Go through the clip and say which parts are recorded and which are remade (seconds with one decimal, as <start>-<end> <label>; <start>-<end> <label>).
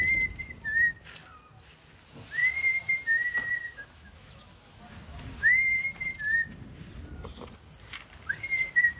0.0-3.6 recorded; 3.6-4.8 remade; 4.8-9.0 recorded